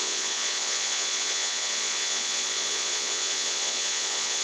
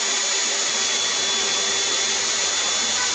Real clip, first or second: second